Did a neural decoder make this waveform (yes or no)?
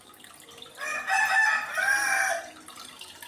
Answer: yes